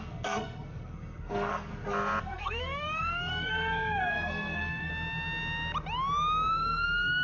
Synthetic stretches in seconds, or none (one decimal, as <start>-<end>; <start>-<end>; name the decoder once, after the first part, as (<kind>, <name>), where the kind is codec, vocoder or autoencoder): 0.0-1.7 (codec, SNAC); 2.2-4.9; 6.5-7.2